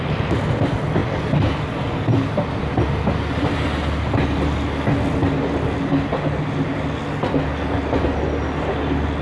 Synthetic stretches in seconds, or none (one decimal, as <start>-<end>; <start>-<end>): none